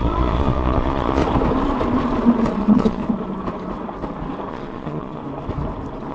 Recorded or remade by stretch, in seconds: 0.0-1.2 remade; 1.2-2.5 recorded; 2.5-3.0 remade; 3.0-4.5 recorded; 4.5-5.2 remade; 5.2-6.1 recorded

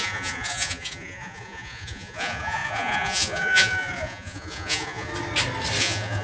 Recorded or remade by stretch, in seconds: 0.0-5.1 remade; 5.1-5.8 recorded; 5.8-6.2 remade

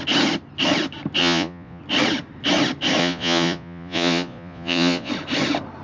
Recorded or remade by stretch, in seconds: 0.0-1.2 recorded; 1.2-1.8 remade; 1.8-3.0 recorded; 3.0-5.1 remade; 5.1-5.8 recorded

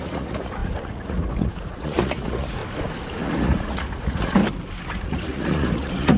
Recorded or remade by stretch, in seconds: 0.0-2.6 remade; 2.6-3.2 recorded; 3.2-4.4 remade; 4.4-5.0 recorded; 5.0-6.2 remade

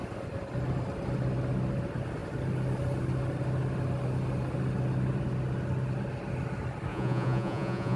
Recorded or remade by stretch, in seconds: 0.0-6.9 recorded; 6.9-8.0 remade